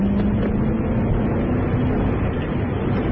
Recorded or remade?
recorded